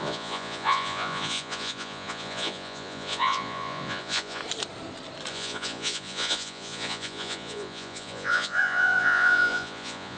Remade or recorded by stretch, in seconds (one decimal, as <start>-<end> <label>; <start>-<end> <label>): 0.0-4.4 remade; 4.4-5.3 recorded; 5.3-10.2 remade